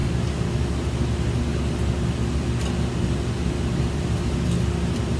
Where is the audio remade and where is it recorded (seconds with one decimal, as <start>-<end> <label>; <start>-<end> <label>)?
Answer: 0.0-5.2 recorded